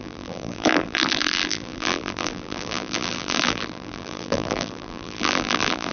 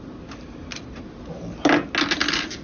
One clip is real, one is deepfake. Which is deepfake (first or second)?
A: first